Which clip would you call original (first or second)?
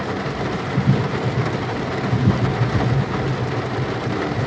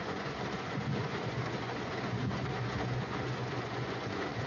first